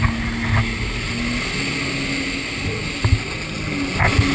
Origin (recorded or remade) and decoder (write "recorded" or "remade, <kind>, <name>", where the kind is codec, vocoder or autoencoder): recorded